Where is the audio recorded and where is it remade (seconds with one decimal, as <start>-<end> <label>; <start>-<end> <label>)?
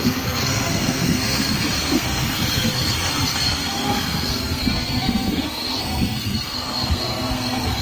0.0-7.8 remade